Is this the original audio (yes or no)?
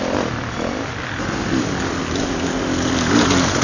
yes